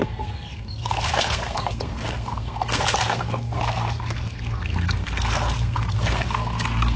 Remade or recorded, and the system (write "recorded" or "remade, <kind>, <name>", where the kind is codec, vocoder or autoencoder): remade, codec, SNAC